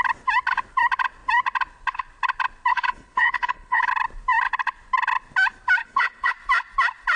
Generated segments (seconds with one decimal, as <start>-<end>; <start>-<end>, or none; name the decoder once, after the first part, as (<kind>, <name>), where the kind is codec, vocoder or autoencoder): 2.7-3.9 (codec, HILCodec); 5.8-6.3